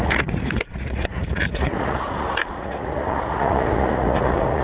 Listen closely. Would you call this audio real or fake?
fake